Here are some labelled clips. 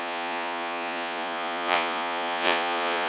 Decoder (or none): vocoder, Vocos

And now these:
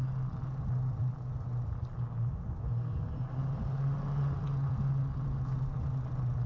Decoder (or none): none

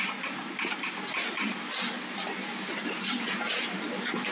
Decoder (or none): none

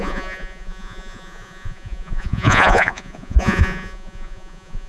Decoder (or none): vocoder, Vocos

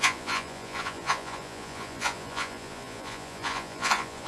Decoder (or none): vocoder, Vocos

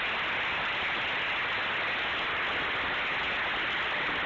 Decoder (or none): none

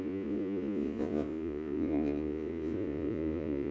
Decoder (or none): vocoder, Vocos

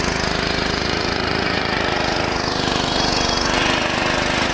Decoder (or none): vocoder, Vocos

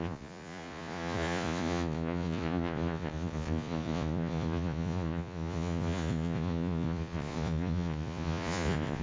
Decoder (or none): vocoder, Vocos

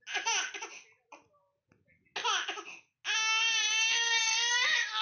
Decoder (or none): none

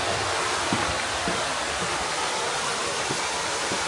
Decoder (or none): none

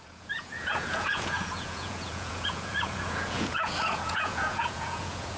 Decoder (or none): vocoder, Vocos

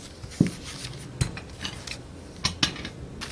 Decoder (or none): none